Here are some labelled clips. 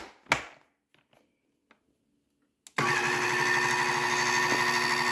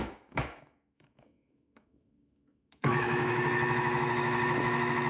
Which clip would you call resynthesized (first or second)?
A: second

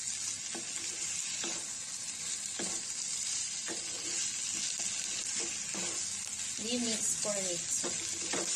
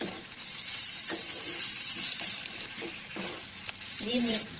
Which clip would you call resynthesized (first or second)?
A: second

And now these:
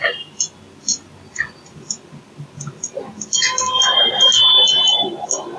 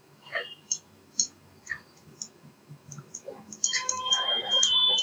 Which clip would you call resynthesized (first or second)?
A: second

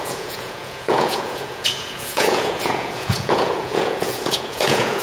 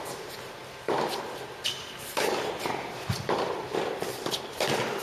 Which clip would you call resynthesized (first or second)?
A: first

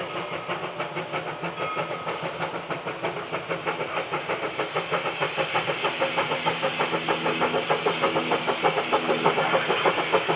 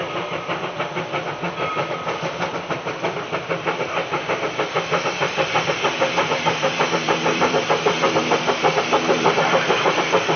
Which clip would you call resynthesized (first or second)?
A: second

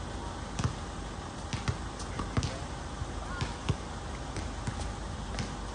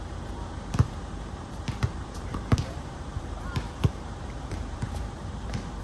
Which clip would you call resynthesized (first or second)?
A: second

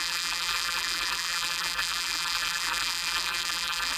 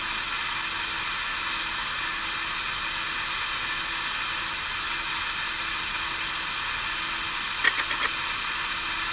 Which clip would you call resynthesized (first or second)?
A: first